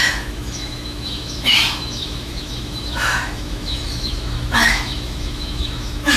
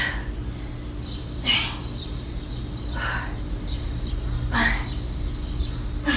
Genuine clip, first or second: second